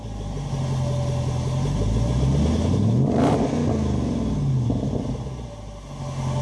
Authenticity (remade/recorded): recorded